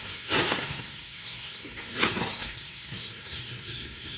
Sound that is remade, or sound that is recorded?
remade